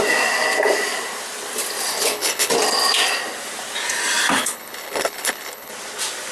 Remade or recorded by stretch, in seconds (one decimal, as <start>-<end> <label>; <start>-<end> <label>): 0.0-1.9 recorded; 1.9-2.5 remade; 2.5-4.4 recorded; 4.4-5.7 remade; 5.7-6.3 recorded